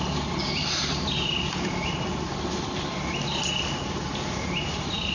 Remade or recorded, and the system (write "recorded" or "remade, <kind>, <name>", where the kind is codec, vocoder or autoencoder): recorded